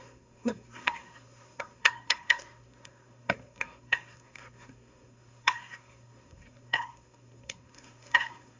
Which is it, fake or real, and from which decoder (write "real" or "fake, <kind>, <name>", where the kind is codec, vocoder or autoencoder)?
fake, codec, SNAC